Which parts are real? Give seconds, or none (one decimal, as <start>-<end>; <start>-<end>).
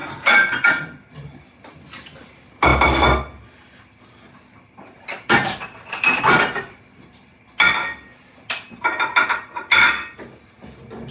0.0-11.1